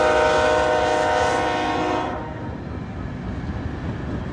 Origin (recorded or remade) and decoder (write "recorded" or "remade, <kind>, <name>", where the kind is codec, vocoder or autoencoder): recorded